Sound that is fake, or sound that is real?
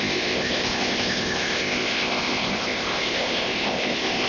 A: fake